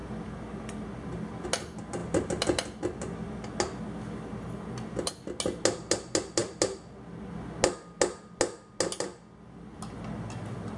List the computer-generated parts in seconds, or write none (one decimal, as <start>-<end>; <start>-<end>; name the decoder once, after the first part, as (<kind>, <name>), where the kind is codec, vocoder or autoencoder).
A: none